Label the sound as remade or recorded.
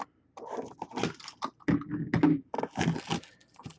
recorded